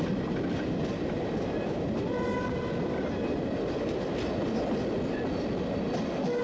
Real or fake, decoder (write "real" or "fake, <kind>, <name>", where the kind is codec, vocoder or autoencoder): real